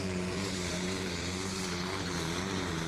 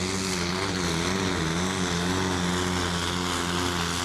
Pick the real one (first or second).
second